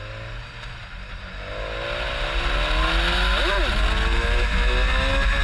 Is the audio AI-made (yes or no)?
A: no